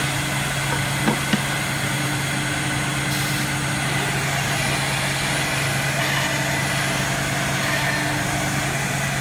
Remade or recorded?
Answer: recorded